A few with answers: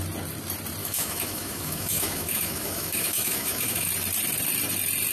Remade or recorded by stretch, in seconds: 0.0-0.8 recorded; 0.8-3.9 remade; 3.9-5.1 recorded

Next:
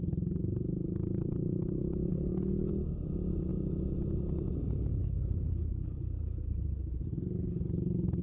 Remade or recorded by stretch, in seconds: 0.0-2.1 recorded; 2.1-2.7 remade; 2.7-5.0 recorded; 5.0-7.7 remade; 7.7-8.2 recorded

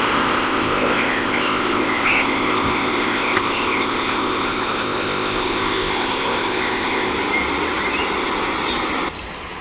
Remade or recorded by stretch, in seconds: 0.0-7.1 remade; 7.1-9.6 recorded